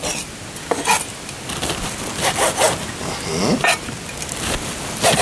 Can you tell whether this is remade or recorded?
recorded